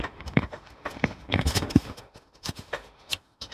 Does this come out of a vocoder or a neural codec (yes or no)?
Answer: yes